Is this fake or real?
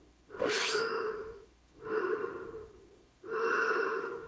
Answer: fake